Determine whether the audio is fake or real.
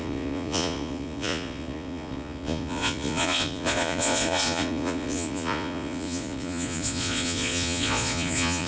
fake